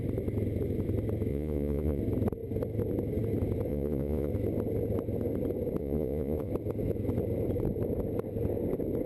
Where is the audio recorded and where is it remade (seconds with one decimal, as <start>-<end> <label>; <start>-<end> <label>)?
0.0-1.3 recorded; 1.3-2.0 remade; 2.0-3.7 recorded; 3.7-4.3 remade; 4.3-5.8 recorded; 5.8-6.5 remade; 6.5-9.1 recorded